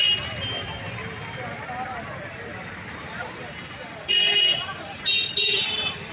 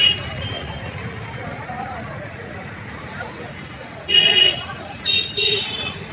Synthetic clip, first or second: second